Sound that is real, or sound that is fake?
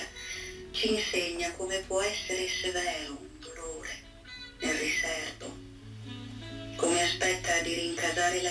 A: real